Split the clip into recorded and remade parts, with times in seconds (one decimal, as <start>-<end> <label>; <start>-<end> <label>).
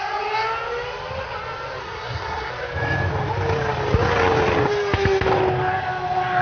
0.0-1.8 recorded; 1.8-2.5 remade; 2.5-6.4 recorded